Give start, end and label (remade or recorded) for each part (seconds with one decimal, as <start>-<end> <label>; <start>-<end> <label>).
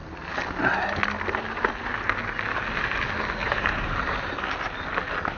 0.0-3.4 recorded; 3.4-4.3 remade; 4.3-5.4 recorded